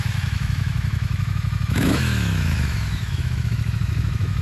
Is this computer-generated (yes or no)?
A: yes